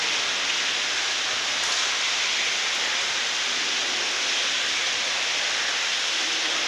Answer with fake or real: real